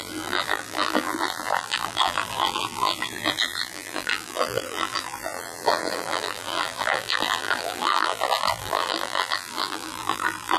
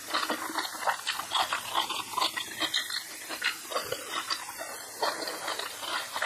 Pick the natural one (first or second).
second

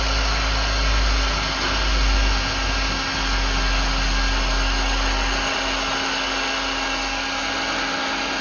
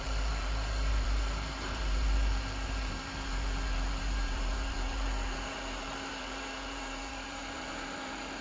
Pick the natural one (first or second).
first